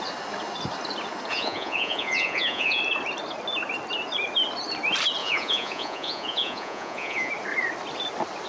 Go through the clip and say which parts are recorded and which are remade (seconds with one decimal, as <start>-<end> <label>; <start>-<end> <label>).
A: 0.0-1.3 recorded; 1.3-2.8 remade; 2.8-5.2 recorded; 5.2-7.3 remade; 7.3-8.5 recorded

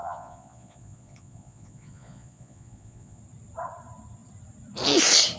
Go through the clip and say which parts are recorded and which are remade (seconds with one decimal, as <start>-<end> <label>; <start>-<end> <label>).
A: 0.0-3.2 remade; 3.2-5.4 recorded

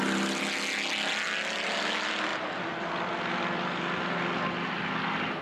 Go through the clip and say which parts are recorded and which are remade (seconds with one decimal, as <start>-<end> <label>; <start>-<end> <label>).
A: 0.0-5.4 recorded

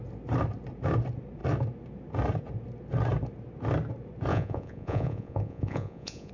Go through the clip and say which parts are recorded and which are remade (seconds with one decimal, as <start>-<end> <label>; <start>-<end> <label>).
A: 0.0-4.3 recorded; 4.3-6.3 remade

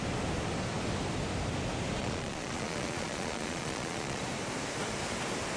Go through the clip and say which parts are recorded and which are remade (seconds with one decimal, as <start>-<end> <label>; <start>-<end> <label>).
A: 0.0-2.0 recorded; 2.0-4.2 remade; 4.2-5.6 recorded

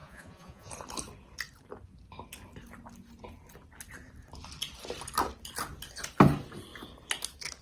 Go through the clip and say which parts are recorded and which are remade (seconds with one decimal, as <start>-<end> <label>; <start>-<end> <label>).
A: 0.0-0.7 remade; 0.7-7.6 recorded